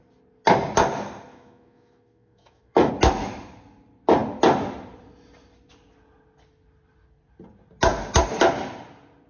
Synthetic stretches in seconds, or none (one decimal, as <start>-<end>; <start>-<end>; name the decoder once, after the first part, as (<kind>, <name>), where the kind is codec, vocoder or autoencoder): 1.3-2.9 (autoencoder, DAC-VAE)